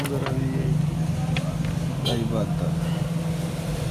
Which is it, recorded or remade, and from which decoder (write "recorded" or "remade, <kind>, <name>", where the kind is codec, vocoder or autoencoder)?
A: recorded